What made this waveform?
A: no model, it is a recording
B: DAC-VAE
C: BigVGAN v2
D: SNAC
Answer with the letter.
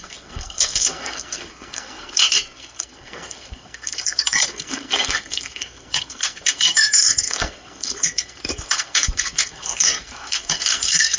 D